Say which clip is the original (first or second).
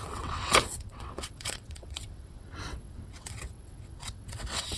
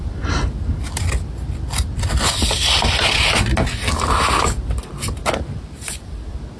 second